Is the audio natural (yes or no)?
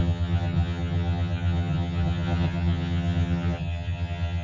no